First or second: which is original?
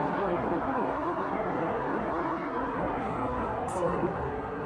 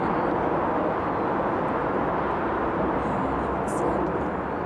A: second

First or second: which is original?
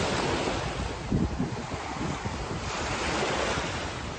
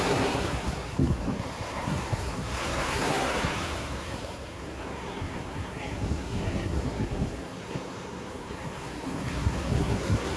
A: first